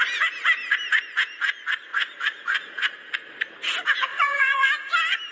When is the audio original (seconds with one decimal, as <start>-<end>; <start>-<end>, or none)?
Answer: 0.0-1.9; 2.9-4.1; 4.7-5.3